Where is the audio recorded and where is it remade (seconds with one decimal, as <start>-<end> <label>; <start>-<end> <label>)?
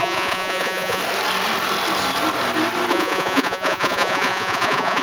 0.0-1.0 remade; 1.0-2.9 recorded; 2.9-5.0 remade